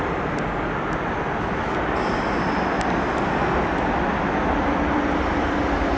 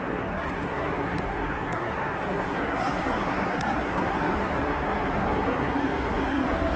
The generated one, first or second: second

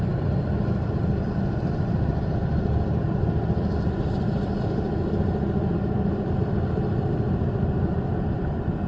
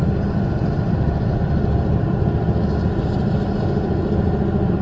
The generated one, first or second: first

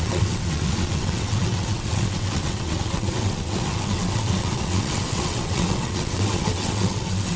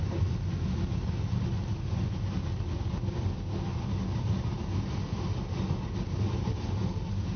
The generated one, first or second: first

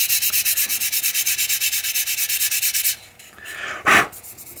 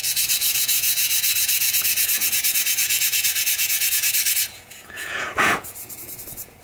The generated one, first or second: second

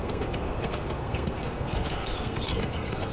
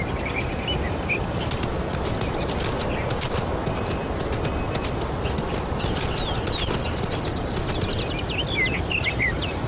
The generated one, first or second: first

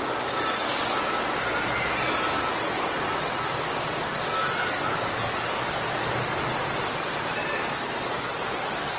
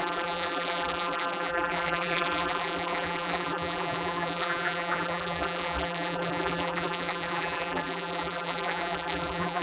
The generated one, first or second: second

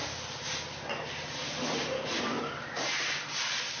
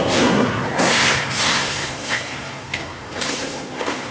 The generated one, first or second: second